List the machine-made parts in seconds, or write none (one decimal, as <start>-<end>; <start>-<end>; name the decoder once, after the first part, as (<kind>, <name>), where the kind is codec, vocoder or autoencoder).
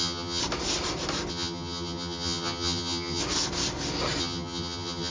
0.0-0.4 (vocoder, HiFi-GAN); 1.3-3.2; 4.2-5.1